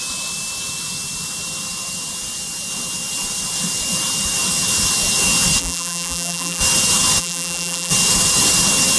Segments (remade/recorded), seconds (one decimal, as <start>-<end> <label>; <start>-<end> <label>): 0.0-5.6 recorded; 5.6-6.6 remade; 6.6-7.2 recorded; 7.2-7.9 remade; 7.9-9.0 recorded